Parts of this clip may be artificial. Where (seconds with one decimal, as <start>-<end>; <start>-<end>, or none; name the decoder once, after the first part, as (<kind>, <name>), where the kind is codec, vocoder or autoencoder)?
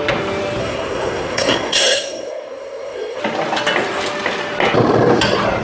0.6-3.2 (codec, SNAC)